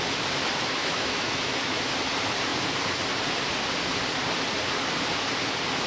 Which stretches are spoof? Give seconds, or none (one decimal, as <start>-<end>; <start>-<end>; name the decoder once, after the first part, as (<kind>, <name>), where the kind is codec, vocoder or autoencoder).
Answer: 0.8-1.9 (autoencoder, DAC-VAE)